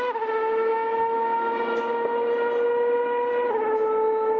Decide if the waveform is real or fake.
real